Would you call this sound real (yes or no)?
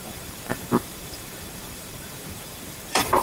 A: no